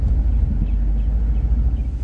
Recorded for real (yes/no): yes